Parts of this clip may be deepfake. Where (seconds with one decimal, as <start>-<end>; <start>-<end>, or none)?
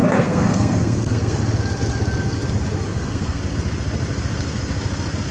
0.0-1.4; 2.9-3.4